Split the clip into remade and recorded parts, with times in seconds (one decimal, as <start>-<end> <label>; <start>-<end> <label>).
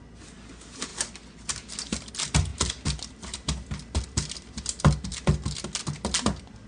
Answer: 0.0-6.7 recorded